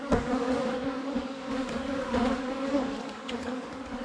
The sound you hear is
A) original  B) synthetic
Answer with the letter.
B